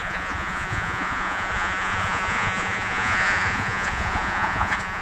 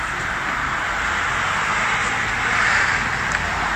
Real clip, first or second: second